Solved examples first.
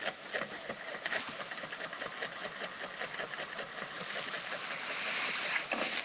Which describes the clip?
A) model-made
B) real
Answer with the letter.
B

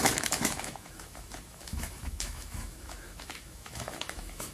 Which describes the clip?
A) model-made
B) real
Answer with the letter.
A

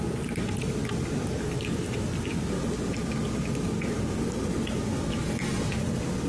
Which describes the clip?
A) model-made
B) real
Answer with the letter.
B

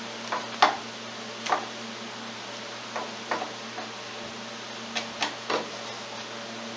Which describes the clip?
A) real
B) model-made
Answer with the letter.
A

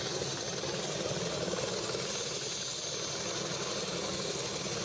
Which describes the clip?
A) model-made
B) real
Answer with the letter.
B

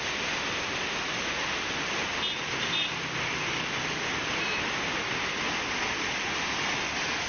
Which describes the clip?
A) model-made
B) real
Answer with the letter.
B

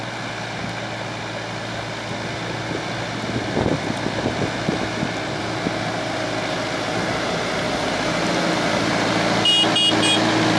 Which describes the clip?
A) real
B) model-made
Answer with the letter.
A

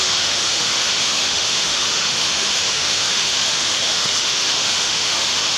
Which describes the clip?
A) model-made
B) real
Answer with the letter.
A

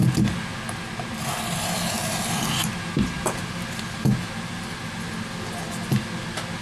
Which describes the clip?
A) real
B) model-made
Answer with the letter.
A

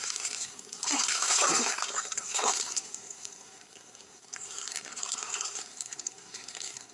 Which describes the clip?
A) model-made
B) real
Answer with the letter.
A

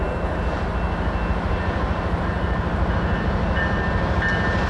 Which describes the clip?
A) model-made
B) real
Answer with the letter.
B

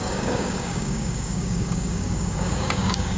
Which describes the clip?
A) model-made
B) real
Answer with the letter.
A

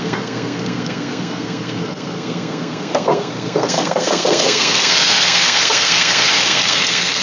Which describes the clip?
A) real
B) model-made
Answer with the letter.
B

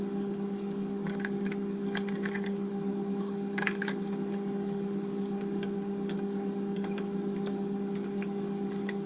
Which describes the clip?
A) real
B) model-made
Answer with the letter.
B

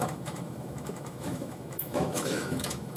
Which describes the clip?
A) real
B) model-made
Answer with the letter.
B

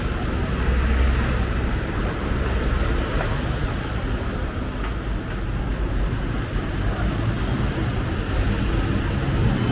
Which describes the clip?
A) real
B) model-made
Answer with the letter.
A